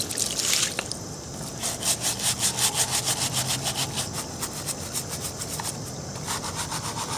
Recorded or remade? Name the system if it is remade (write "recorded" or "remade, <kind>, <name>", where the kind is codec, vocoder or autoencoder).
recorded